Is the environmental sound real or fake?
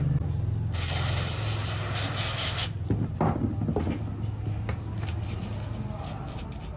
real